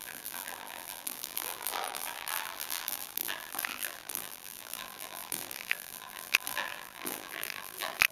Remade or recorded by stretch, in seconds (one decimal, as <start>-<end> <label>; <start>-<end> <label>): 0.0-8.1 remade

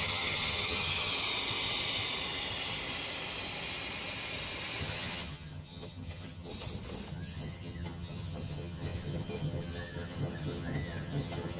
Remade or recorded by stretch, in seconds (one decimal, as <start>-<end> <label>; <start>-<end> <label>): 0.0-1.1 remade; 1.1-4.8 recorded; 4.8-6.5 remade; 6.5-7.1 recorded; 7.1-11.6 remade

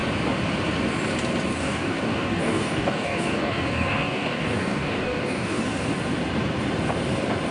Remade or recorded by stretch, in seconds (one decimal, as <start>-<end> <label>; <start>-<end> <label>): 0.0-1.6 recorded; 1.6-5.6 remade; 5.6-7.5 recorded

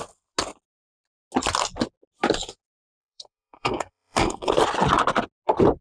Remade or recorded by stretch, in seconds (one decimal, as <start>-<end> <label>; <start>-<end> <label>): 0.0-3.0 recorded; 3.0-4.5 remade; 4.5-5.8 recorded

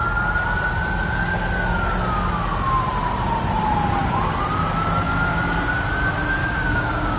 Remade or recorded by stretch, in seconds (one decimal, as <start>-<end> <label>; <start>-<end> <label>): 0.0-6.4 recorded; 6.4-7.2 remade

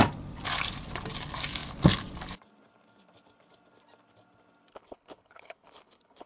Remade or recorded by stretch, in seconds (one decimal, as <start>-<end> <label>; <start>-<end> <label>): 0.0-4.7 recorded; 4.7-6.3 remade

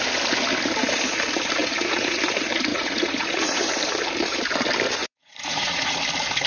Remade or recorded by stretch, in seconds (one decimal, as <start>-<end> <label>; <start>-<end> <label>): 0.0-1.6 recorded; 1.6-2.2 remade; 2.2-2.7 recorded; 2.7-3.6 remade; 3.6-5.0 recorded; 5.0-6.0 remade; 6.0-6.5 recorded